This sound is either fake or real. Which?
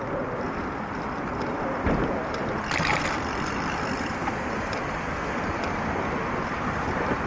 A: fake